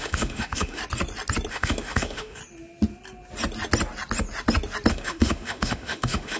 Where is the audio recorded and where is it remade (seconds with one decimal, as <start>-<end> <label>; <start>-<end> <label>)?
0.0-0.8 remade; 0.8-1.5 recorded; 1.5-2.4 remade; 2.4-4.9 recorded; 4.9-6.4 remade

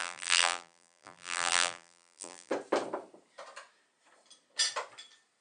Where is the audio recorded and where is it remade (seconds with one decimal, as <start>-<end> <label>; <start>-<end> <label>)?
0.0-2.5 remade; 2.5-5.4 recorded

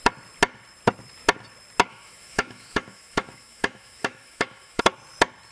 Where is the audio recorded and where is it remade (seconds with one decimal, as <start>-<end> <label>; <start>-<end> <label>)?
0.0-1.9 recorded; 1.9-4.8 remade; 4.8-5.5 recorded

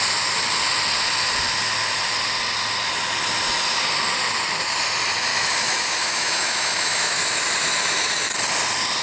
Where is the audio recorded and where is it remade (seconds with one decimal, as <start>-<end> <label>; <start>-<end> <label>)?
0.0-5.3 recorded; 5.3-7.2 remade; 7.2-9.0 recorded